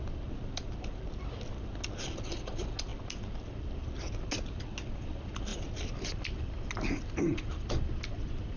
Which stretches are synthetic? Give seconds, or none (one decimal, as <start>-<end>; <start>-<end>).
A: none

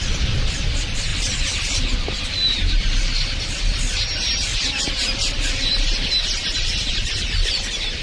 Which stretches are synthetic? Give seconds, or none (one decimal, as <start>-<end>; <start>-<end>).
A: none

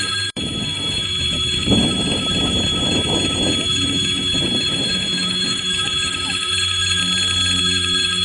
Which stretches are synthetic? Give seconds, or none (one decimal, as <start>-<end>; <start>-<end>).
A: 0.0-7.0; 7.6-8.2

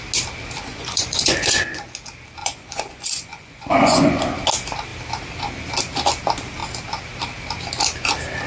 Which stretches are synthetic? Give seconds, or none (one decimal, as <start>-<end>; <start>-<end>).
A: 0.7-1.8; 2.4-4.2

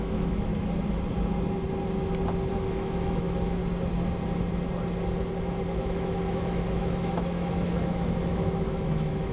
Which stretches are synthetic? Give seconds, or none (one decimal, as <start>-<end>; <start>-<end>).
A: 0.0-0.5; 2.5-3.6; 5.7-9.3

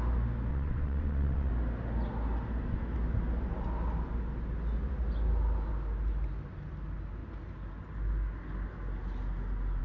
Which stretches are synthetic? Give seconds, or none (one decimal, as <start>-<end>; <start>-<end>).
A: 0.5-1.5

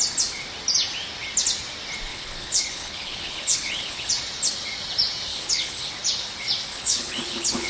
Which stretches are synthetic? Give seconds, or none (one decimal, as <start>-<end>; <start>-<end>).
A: 2.1-4.1; 5.3-5.9; 6.7-7.7

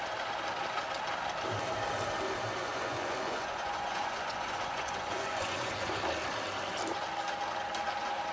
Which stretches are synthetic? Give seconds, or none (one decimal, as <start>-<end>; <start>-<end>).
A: 2.6-5.9